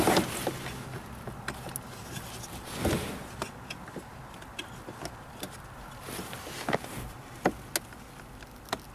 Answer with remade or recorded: recorded